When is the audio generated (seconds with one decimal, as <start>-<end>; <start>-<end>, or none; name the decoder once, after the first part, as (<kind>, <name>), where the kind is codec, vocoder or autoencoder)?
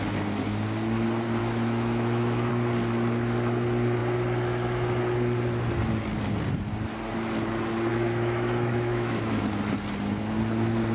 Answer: 1.4-2.5 (autoencoder, DAC-VAE); 7.9-9.4